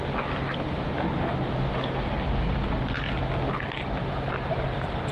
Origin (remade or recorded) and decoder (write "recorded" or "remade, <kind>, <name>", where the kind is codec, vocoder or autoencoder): recorded